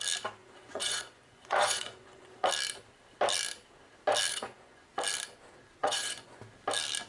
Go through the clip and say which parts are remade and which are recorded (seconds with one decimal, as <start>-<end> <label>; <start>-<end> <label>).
0.0-0.4 recorded; 0.4-2.5 remade; 2.5-4.3 recorded; 4.3-4.9 remade; 4.9-5.8 recorded; 5.8-6.4 remade; 6.4-7.1 recorded